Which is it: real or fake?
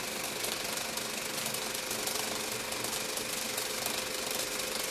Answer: real